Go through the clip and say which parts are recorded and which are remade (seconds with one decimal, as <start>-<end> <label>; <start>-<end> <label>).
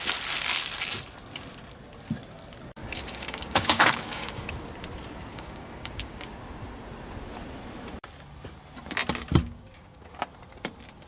0.0-2.8 recorded; 2.8-4.5 remade; 4.5-5.3 recorded; 5.3-6.2 remade; 6.2-9.4 recorded; 9.4-10.1 remade; 10.1-11.1 recorded